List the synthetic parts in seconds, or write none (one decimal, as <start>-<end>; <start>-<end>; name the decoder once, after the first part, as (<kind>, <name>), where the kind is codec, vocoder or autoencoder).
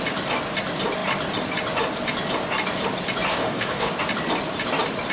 3.3-3.9 (autoencoder, DAC-VAE)